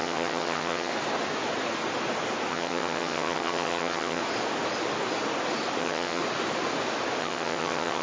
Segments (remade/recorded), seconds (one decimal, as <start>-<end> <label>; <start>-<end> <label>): 0.0-0.9 remade; 0.9-2.5 recorded; 2.5-4.2 remade; 4.2-5.8 recorded; 5.8-6.2 remade; 6.2-7.2 recorded; 7.2-8.0 remade

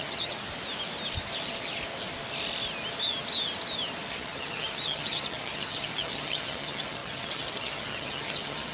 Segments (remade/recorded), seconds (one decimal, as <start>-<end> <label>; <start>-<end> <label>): 0.0-0.5 remade; 0.5-4.1 recorded; 4.1-8.7 remade

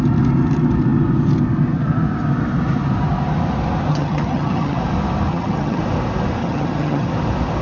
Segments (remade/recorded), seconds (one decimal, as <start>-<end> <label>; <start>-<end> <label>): 0.0-3.9 recorded; 3.9-4.8 remade; 4.8-5.3 recorded; 5.3-5.8 remade; 5.8-6.4 recorded; 6.4-7.1 remade; 7.1-7.6 recorded

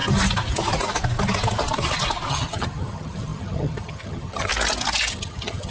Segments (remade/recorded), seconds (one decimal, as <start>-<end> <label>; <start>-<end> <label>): 0.0-2.3 recorded; 2.3-4.5 remade; 4.5-5.1 recorded; 5.1-5.7 remade

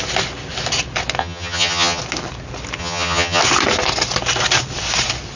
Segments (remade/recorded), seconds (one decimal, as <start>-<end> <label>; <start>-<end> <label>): 0.0-1.2 recorded; 1.2-2.0 remade; 2.0-2.8 recorded; 2.8-3.4 remade; 3.4-5.4 recorded